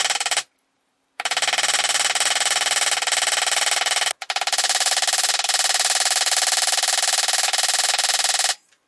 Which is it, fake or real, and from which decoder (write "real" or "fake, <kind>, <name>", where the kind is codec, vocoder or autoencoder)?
real